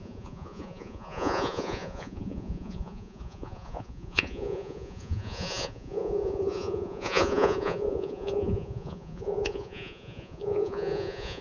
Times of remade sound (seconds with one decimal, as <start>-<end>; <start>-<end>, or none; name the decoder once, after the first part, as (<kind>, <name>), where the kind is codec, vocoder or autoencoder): 0.0-11.4 (vocoder, Vocos)